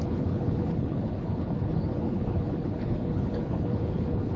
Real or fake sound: fake